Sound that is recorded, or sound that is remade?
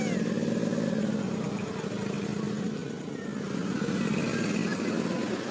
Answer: recorded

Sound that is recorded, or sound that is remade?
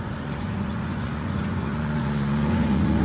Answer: remade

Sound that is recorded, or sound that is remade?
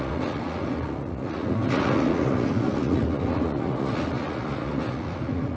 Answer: remade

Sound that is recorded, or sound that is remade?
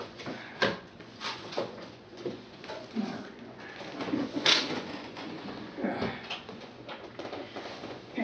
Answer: remade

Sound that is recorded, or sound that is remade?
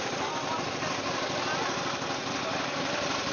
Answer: recorded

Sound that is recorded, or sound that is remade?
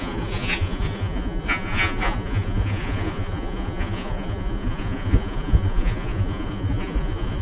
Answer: remade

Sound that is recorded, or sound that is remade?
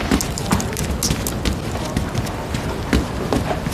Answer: recorded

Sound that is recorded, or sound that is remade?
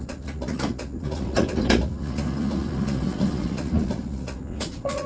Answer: remade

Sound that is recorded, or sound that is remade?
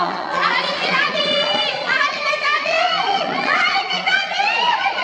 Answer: remade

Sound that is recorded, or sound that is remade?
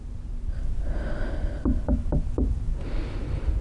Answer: recorded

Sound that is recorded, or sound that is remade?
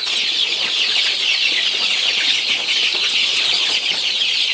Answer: remade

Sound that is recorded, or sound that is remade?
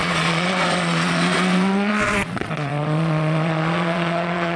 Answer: remade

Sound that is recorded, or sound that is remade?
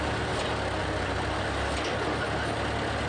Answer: recorded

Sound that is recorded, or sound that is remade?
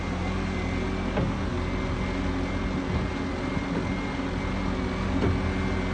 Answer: recorded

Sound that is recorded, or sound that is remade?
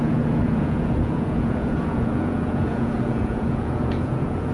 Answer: remade